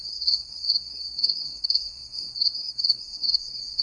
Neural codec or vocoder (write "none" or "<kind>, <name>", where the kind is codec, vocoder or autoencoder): codec, SNAC